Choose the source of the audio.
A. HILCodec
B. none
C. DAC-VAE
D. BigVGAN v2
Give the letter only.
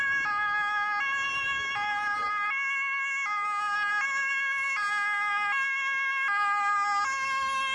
B